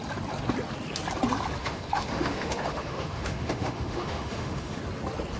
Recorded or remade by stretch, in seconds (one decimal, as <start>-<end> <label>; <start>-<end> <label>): 0.0-1.6 recorded; 1.6-4.8 remade; 4.8-5.4 recorded